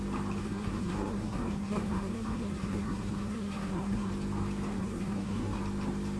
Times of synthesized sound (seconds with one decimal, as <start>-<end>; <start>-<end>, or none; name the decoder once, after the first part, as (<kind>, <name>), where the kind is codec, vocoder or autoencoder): 0.4-4.1 (codec, SNAC); 4.7-5.6